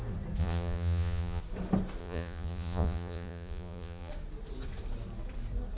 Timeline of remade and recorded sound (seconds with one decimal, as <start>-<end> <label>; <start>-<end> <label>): 0.0-0.4 recorded; 0.4-1.4 remade; 1.4-2.0 recorded; 2.0-4.1 remade; 4.1-5.8 recorded